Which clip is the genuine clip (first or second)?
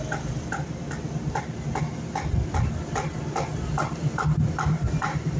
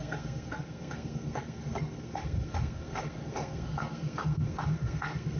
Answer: first